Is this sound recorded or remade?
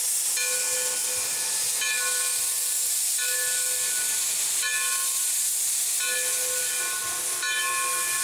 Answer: recorded